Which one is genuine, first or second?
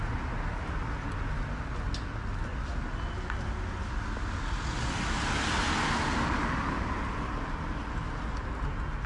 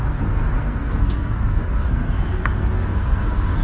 first